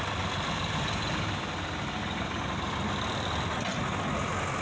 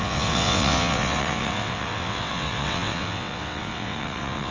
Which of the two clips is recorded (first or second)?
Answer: first